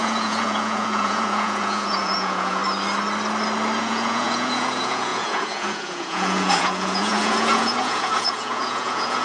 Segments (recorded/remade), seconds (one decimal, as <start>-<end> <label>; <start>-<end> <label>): 0.0-2.6 remade; 2.6-3.8 recorded; 3.8-9.2 remade